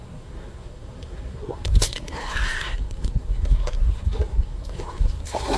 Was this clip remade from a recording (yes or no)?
yes